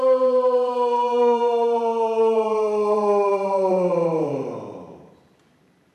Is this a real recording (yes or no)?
no